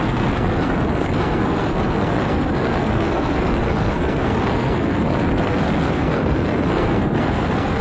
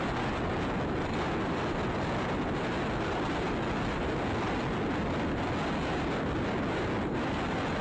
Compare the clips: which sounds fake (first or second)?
first